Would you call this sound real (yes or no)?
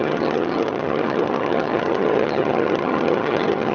no